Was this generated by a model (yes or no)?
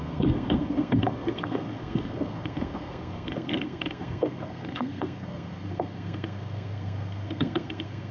yes